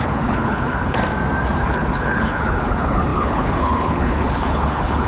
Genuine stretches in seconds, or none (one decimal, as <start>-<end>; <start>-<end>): 1.0-1.6